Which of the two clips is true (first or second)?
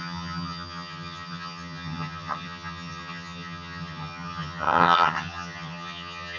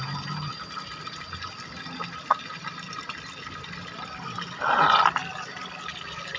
second